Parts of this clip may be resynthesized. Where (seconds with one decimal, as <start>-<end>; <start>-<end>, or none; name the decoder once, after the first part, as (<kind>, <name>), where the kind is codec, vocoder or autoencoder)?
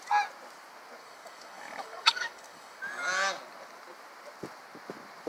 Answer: 1.0-2.8 (codec, DAC)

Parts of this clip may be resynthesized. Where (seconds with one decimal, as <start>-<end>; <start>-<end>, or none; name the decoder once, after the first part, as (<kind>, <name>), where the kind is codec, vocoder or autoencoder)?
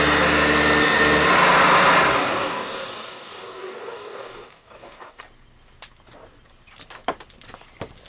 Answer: 2.2-5.2 (codec, DAC)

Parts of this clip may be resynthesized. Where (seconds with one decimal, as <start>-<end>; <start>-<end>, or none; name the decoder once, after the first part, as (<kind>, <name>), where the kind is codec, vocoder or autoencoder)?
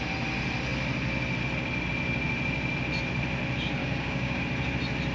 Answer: 3.8-4.4 (codec, DAC)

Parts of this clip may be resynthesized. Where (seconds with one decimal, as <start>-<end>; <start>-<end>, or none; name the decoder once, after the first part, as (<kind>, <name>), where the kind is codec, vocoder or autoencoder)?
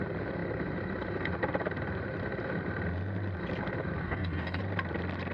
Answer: 4.0-4.6 (codec, DAC)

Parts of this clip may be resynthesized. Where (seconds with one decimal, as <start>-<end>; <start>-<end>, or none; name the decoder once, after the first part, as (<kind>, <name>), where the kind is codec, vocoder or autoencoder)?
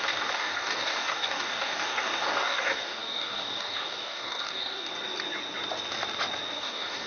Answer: 0.0-4.9 (codec, DAC); 6.6-7.1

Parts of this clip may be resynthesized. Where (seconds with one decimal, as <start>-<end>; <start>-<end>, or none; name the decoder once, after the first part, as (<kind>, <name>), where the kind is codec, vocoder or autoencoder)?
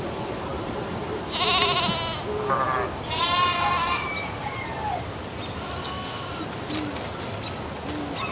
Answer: 5.8-6.4 (codec, DAC)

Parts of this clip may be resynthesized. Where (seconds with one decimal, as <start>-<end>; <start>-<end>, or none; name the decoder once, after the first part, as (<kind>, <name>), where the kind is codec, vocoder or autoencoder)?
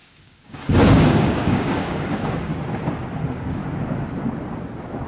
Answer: 0.0-2.5 (codec, DAC); 3.2-3.6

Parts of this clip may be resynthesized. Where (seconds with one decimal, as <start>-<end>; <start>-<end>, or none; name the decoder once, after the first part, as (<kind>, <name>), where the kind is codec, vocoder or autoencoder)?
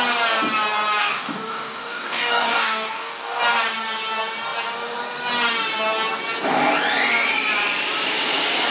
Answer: 1.0-3.4 (codec, DAC)